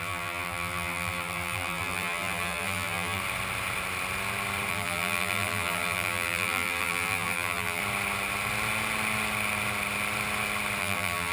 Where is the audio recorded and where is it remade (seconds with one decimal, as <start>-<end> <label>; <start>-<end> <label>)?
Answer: 0.0-3.2 remade; 3.2-4.7 recorded; 4.7-7.8 remade; 7.8-10.8 recorded; 10.8-11.3 remade